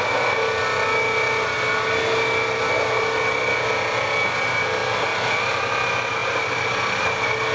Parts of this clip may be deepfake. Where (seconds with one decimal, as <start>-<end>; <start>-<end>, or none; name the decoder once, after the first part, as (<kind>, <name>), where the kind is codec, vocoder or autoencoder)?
none